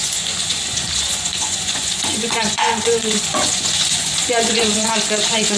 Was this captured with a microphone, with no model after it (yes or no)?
no